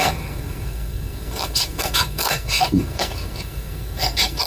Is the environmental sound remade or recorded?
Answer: remade